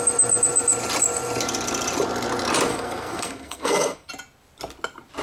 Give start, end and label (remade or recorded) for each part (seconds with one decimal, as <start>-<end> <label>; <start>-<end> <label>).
0.0-2.7 recorded; 2.7-4.1 remade; 4.1-5.2 recorded